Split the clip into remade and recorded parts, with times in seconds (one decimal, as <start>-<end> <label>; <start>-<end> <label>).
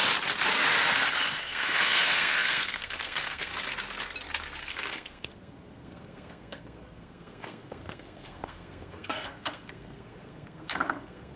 0.0-1.4 recorded; 1.4-3.5 remade; 3.5-4.6 recorded; 4.6-11.4 remade